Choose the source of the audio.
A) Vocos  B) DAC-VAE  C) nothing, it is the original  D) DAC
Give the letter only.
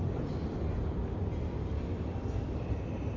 C